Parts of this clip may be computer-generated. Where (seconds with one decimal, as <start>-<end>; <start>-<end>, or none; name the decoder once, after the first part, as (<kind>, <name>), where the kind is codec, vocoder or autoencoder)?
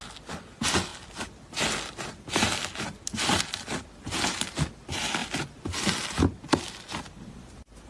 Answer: none